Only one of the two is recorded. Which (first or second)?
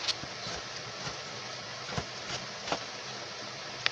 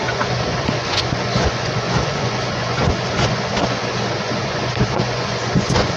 first